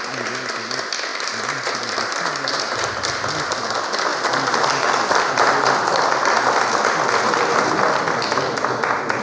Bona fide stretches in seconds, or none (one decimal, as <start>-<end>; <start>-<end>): 0.0-1.1; 2.9-4.1; 5.1-9.2